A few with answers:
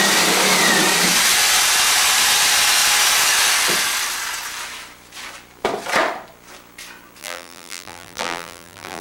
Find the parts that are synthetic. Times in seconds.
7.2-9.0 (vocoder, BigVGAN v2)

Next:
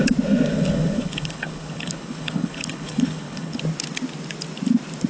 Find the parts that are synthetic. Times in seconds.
0.5-3.6 (codec, HILCodec)

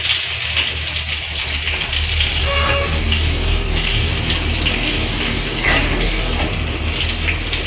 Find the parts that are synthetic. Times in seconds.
2.4-4.1 (codec, DAC); 4.7-6.4

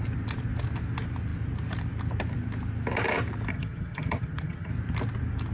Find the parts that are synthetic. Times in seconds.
3.5-4.7 (vocoder, HiFi-GAN)

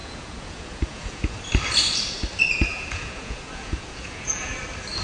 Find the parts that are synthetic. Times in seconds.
0.0-1.4 (vocoder, Vocos); 2.7-4.5